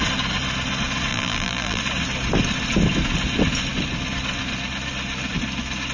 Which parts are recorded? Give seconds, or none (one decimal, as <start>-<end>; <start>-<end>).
0.0-1.1; 1.8-5.9